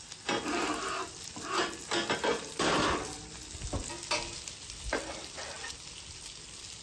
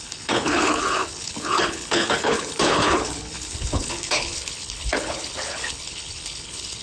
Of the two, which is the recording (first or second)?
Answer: first